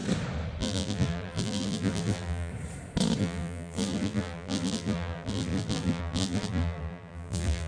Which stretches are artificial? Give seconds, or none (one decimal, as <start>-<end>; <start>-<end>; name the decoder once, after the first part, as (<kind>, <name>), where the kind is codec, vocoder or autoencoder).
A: 0.6-2.5 (vocoder, BigVGAN v2); 3.2-7.7